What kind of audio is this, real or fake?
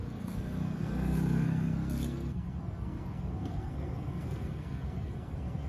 fake